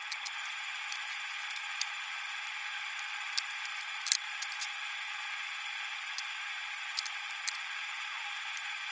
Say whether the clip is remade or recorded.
remade